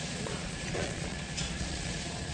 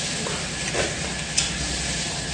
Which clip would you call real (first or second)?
second